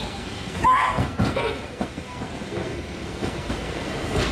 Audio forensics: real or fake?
fake